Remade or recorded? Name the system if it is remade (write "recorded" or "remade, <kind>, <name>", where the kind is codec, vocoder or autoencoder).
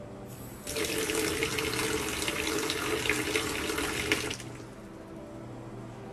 recorded